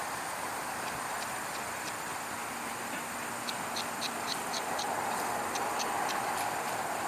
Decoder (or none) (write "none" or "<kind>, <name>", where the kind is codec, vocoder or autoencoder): none